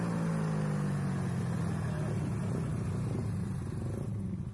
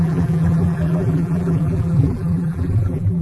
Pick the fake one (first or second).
second